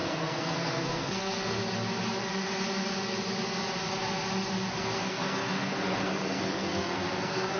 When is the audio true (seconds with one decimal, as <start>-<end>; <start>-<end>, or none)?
1.6-4.7